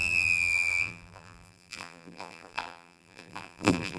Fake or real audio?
fake